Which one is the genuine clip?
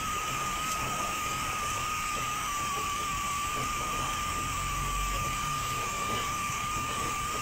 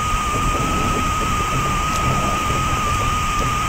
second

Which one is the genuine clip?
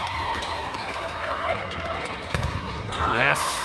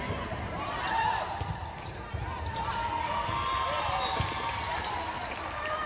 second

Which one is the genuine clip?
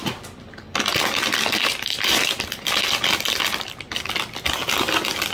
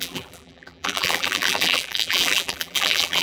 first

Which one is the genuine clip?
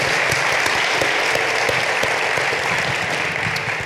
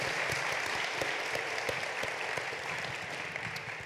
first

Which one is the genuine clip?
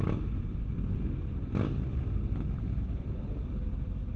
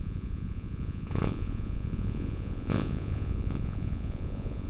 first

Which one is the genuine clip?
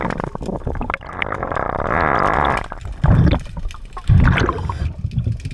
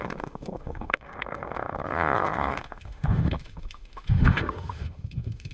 first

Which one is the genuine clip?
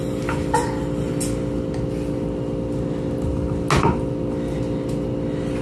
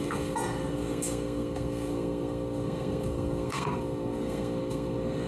first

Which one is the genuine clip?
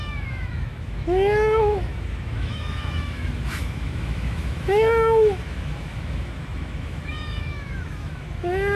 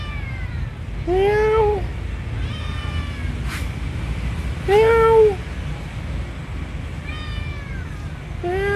second